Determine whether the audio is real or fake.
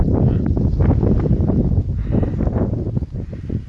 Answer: real